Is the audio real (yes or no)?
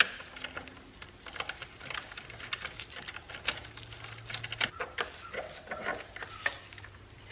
yes